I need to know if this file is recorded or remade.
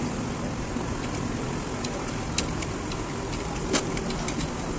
recorded